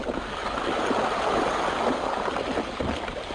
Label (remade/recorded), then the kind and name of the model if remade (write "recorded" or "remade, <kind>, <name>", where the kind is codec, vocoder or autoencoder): recorded